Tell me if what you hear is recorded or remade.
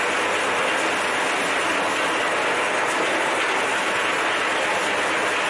recorded